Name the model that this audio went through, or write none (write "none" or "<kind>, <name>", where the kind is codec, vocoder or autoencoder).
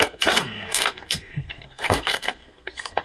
codec, SNAC